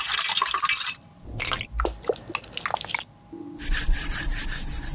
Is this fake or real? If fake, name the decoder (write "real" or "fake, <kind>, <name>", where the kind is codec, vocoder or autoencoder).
real